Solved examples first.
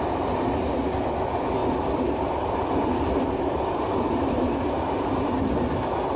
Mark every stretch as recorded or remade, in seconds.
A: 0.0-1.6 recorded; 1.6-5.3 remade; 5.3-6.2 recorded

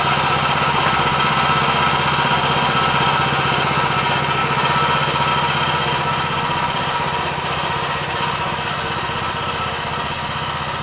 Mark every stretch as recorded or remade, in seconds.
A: 0.0-10.8 recorded

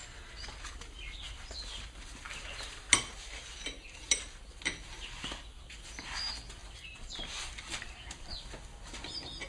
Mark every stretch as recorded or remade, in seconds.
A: 0.0-6.6 recorded; 6.6-8.4 remade; 8.4-9.5 recorded

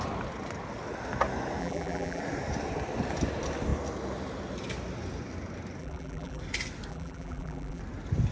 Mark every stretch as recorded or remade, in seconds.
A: 0.0-1.6 recorded; 1.6-2.2 remade; 2.2-5.8 recorded; 5.8-6.4 remade; 6.4-6.9 recorded; 6.9-7.8 remade; 7.8-8.3 recorded

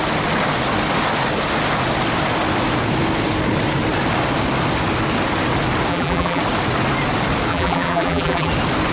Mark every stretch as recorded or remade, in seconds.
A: 0.0-5.9 recorded; 5.9-6.4 remade; 6.4-7.5 recorded; 7.5-8.5 remade; 8.5-8.9 recorded

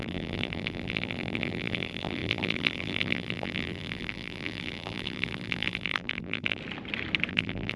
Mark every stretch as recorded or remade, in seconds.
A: 0.0-6.6 remade; 6.6-7.3 recorded; 7.3-7.8 remade